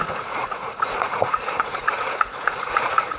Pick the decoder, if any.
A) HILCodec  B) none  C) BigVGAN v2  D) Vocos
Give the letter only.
D